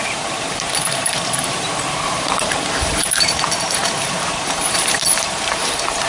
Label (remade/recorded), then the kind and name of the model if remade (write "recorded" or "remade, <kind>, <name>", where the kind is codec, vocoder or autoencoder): remade, vocoder, BigVGAN v2